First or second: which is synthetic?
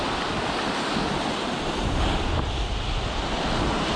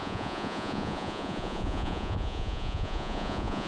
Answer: second